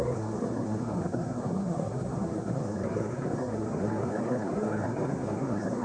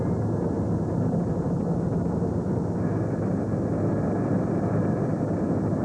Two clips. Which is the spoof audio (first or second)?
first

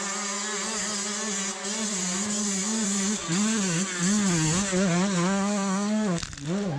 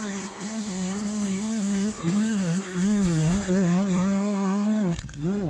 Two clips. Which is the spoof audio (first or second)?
second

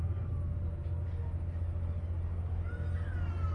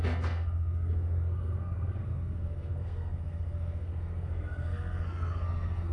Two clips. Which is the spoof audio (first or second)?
second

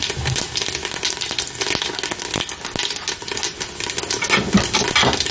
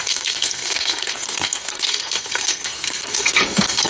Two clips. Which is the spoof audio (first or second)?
second